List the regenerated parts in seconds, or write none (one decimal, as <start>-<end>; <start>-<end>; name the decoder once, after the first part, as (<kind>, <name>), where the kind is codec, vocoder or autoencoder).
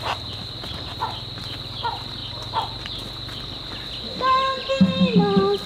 none